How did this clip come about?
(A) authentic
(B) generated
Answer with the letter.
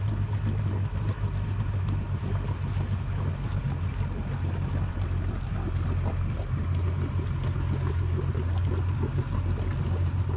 A